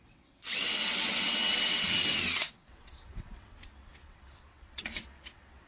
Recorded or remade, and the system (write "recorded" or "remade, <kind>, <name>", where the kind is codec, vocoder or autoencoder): remade, vocoder, WaveNeXt